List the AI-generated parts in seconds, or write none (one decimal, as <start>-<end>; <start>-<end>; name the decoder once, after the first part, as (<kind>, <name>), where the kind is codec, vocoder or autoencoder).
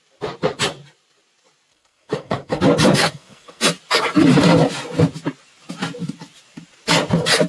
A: 1.7-2.6 (codec, SNAC); 3.0-3.6